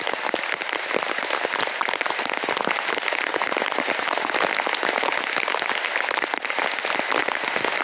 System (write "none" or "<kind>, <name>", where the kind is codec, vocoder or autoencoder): none